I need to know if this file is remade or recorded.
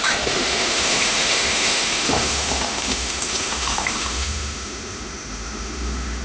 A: remade